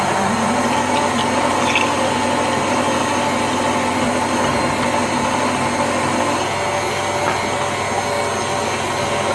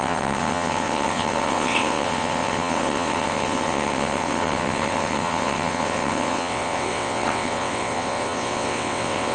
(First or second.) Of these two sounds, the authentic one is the first